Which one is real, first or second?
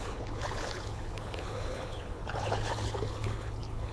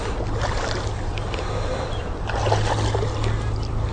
second